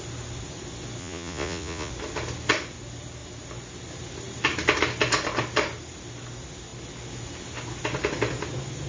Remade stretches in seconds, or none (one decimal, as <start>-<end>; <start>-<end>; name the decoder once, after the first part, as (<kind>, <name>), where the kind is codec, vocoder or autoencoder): 1.0-1.9 (vocoder, Vocos)